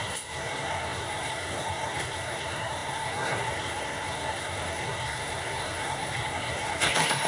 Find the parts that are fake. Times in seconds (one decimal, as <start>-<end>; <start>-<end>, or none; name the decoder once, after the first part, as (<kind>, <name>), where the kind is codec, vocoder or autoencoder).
0.0-7.3 (codec, SNAC)